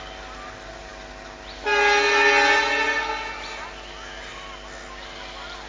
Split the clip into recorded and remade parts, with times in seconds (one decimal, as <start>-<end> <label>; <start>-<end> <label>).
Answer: 0.0-5.7 recorded